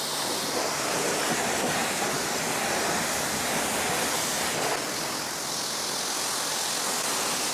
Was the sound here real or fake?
real